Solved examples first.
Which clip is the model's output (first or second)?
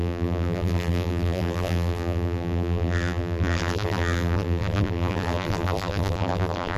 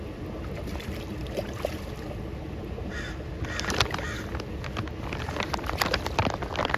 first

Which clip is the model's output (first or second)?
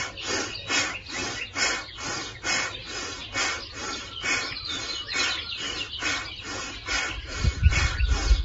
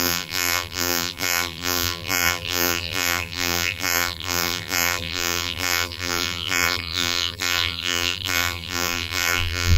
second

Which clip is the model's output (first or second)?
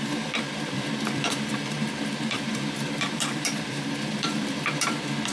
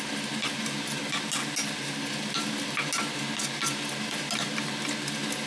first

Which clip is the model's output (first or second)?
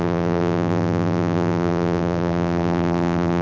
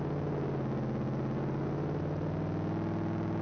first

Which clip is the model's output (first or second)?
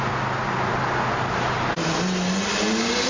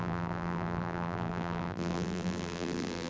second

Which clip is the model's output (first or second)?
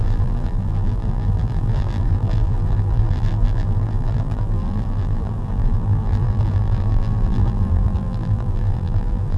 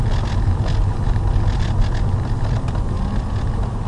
first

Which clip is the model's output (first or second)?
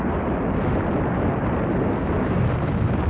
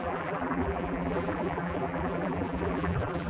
second